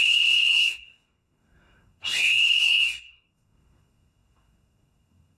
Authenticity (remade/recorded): remade